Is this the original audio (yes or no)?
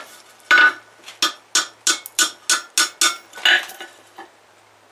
yes